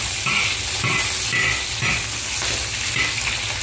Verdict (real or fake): real